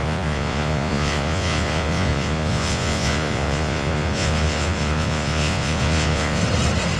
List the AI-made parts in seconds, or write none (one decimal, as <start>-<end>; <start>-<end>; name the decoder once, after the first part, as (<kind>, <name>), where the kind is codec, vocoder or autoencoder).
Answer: 0.0-6.4 (vocoder, Vocos)

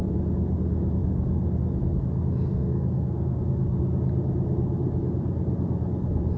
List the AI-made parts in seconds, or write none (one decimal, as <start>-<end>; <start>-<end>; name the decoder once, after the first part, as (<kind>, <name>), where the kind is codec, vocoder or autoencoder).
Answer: 2.5-3.4 (codec, SNAC)

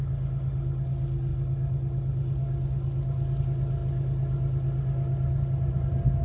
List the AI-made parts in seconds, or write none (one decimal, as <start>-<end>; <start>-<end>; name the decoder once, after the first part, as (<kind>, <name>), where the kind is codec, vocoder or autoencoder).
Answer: none

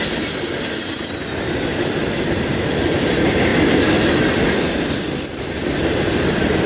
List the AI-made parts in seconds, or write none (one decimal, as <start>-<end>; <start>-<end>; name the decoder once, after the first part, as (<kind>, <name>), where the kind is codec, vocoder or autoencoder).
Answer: 0.0-3.5 (vocoder, BigVGAN v2)

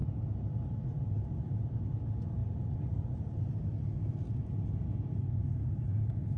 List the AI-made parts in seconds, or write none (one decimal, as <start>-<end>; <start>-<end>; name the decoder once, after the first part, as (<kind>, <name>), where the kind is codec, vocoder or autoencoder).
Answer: none

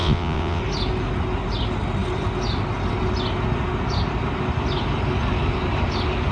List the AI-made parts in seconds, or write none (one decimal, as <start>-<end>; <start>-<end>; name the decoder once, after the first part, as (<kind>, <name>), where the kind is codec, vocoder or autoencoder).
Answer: 0.0-0.6 (vocoder, WaveNeXt)

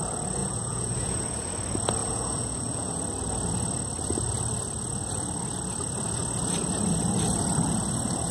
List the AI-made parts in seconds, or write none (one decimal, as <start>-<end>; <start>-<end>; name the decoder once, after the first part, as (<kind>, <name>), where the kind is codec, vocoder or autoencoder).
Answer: 0.4-1.5 (vocoder, Vocos); 2.0-3.0